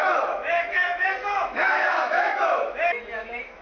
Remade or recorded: remade